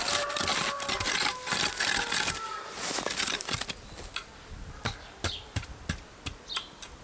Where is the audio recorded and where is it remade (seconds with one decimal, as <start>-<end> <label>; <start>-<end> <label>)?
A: 0.0-7.0 recorded